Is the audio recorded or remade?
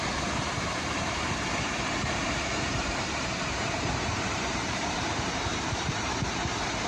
remade